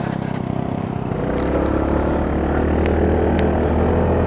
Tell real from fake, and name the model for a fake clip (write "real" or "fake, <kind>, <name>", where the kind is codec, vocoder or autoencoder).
real